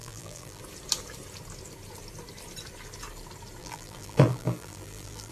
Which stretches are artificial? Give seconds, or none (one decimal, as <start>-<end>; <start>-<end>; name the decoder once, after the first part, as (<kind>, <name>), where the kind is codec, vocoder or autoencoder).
0.0-0.6 (vocoder, BigVGAN v2); 3.6-5.3